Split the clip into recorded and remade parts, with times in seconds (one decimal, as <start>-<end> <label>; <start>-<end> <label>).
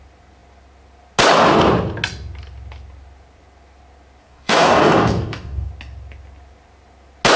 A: 0.0-4.2 recorded; 4.2-5.7 remade; 5.7-7.4 recorded